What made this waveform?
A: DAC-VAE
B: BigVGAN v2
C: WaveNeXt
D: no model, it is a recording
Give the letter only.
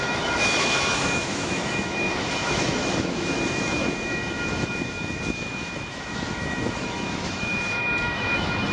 A